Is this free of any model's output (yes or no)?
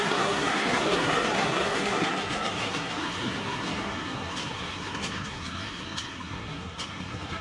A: no